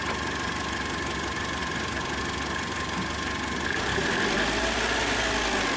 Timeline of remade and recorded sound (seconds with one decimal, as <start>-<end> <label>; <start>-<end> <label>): 0.0-5.8 recorded